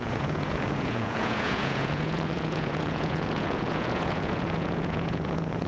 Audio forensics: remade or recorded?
remade